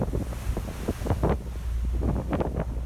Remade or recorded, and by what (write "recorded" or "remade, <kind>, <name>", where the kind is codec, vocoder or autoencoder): recorded